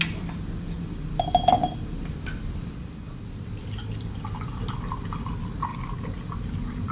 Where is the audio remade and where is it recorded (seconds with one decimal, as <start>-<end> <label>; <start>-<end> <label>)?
0.0-6.9 recorded